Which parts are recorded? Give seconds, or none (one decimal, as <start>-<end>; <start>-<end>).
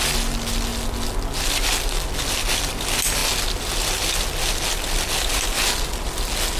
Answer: 0.0-6.6